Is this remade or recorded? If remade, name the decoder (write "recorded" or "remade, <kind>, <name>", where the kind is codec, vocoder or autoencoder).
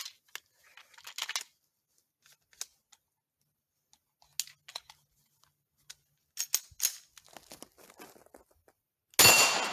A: recorded